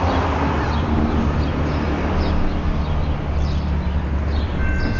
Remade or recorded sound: recorded